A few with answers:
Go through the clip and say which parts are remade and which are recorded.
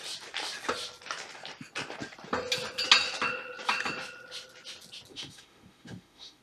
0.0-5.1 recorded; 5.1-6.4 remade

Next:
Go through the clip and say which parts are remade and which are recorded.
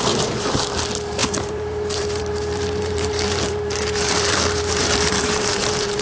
0.0-6.0 remade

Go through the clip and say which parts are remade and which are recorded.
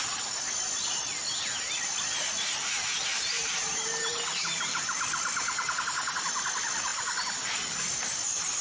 0.0-3.1 recorded; 3.1-5.0 remade; 5.0-8.6 recorded